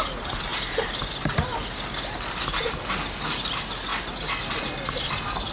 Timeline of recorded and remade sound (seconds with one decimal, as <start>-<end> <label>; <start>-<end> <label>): 0.0-5.5 recorded